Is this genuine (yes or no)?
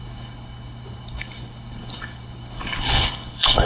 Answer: no